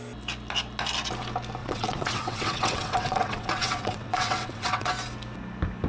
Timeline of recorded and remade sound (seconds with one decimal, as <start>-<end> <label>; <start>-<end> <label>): 0.0-1.6 recorded; 1.6-4.9 remade; 4.9-5.9 recorded